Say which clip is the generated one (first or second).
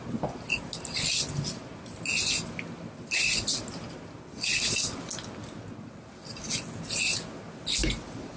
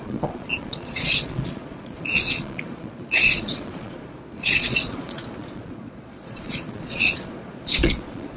second